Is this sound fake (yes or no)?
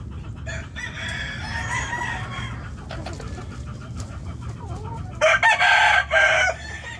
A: no